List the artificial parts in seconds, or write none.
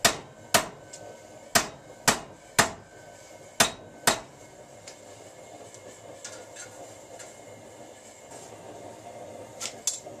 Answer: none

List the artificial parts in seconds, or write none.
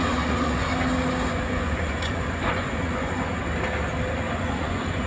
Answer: 0.0-0.7 (vocoder, Vocos); 1.3-3.3; 4.4-5.1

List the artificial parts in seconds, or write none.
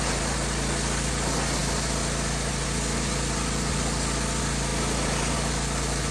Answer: none